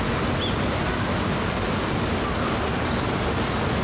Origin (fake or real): real